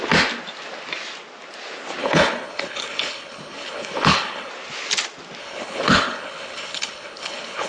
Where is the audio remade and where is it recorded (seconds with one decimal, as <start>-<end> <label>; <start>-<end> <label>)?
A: 0.0-2.0 recorded; 2.0-4.5 remade; 4.5-5.4 recorded; 5.4-7.7 remade